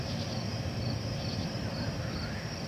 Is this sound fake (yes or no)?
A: no